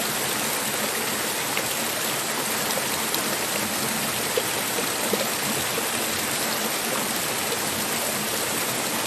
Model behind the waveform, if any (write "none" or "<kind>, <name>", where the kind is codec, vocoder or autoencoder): none